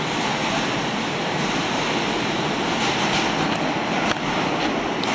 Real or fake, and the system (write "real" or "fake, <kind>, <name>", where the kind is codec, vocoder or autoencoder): real